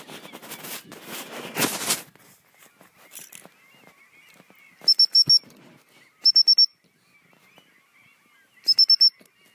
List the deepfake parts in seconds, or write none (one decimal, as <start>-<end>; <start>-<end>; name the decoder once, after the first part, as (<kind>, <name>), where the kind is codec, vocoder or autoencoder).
none